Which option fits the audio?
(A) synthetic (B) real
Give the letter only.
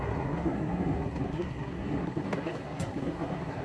A